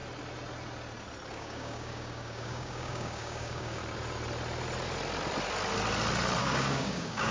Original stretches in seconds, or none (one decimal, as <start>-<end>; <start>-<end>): 0.0-1.3; 3.8-6.4